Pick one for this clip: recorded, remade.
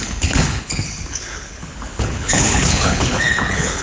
remade